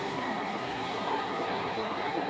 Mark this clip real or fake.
fake